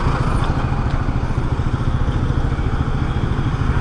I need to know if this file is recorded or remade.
recorded